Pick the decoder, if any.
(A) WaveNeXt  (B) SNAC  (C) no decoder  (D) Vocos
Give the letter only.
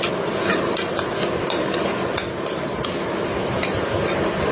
C